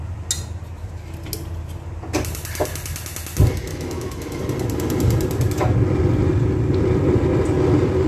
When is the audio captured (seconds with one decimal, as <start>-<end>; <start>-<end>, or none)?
0.0-3.7; 4.4-8.1